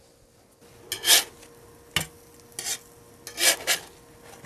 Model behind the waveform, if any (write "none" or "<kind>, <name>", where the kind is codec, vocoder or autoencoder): none